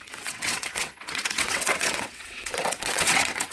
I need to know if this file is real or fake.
fake